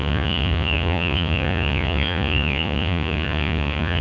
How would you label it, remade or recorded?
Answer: remade